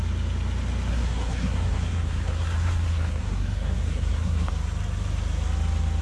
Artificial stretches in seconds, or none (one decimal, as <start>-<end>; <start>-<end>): 0.9-4.5

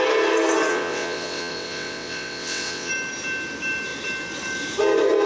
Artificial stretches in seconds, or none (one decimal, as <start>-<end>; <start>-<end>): 0.7-2.9

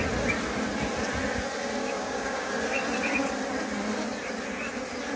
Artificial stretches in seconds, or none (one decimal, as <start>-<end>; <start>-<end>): 1.8-2.5

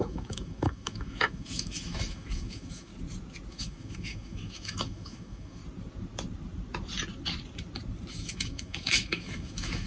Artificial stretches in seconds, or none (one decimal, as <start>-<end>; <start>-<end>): 0.0-2.9; 3.5-5.6; 8.1-9.9

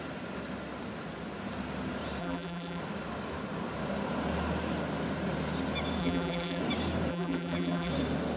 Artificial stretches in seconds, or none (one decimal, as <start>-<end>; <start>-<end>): 2.2-2.8; 6.0-6.6; 7.1-7.9

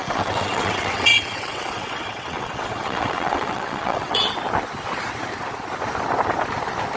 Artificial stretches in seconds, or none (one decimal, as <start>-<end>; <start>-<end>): 0.0-4.2

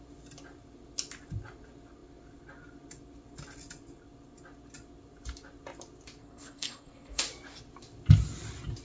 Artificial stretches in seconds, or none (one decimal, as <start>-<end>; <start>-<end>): 6.2-7.2

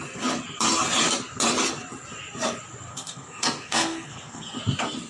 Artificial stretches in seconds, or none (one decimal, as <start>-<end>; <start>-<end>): 2.9-4.6